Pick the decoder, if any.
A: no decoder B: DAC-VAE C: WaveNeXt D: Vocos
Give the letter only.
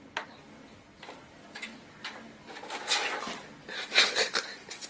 A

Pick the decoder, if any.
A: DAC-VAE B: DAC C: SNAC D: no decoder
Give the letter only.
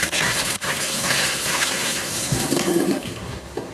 C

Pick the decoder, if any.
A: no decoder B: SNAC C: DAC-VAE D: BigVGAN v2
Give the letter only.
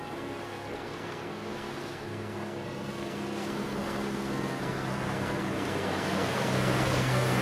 B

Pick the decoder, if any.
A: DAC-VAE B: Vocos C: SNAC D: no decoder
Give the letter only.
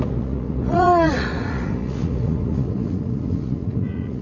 B